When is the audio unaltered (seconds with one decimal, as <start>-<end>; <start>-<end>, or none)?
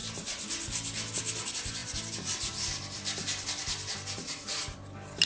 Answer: none